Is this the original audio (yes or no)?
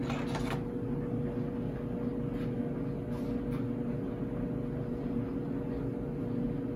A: yes